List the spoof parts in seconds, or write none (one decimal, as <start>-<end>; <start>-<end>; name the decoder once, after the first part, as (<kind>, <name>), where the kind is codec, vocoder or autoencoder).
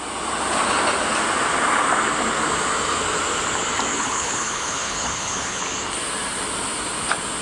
3.9-5.6 (codec, HILCodec)